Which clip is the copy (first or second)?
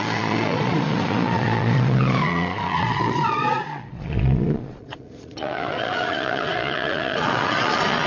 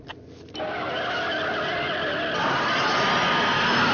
first